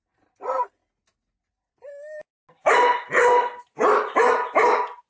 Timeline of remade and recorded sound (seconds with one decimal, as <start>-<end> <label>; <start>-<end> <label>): 0.0-5.1 recorded